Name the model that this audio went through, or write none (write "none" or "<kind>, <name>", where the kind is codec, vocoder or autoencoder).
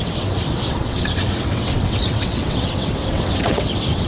vocoder, WaveNeXt